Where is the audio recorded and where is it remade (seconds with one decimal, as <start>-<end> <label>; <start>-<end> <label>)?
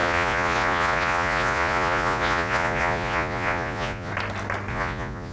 0.0-4.1 remade; 4.1-4.7 recorded; 4.7-5.3 remade